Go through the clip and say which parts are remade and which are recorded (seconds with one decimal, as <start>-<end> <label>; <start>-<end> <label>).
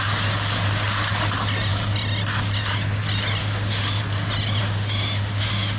0.0-3.4 recorded; 3.4-4.0 remade; 4.0-4.6 recorded; 4.6-5.8 remade